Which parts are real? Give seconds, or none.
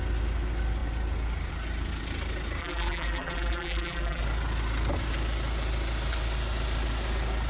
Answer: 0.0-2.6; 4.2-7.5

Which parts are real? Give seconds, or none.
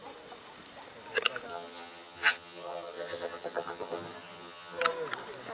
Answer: 0.0-1.5; 4.8-5.5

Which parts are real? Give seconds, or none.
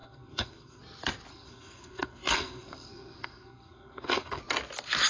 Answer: 0.8-1.3; 4.4-5.1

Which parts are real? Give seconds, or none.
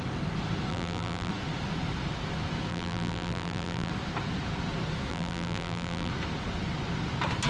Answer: 0.0-0.7; 1.3-2.7; 3.9-5.1; 6.1-7.5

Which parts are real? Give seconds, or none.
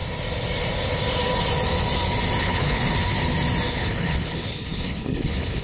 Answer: 0.0-2.4; 2.8-3.7